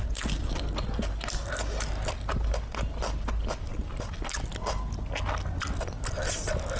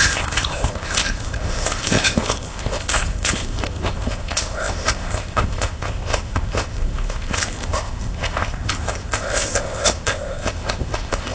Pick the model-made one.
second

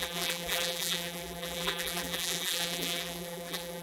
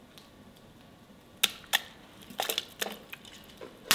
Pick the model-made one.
first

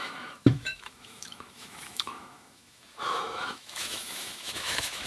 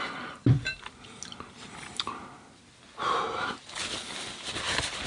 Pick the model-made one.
first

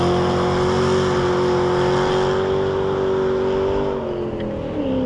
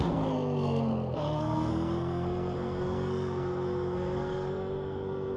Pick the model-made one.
second